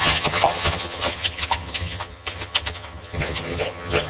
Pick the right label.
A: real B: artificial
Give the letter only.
B